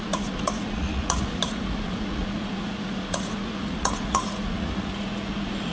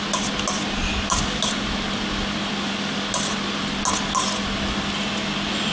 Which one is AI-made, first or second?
first